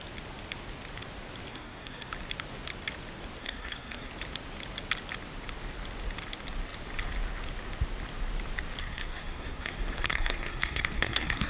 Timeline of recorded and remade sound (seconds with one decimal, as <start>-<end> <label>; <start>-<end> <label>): 0.0-1.5 recorded; 1.5-2.1 remade; 2.1-3.4 recorded; 3.4-4.1 remade; 4.1-8.8 recorded; 8.8-11.5 remade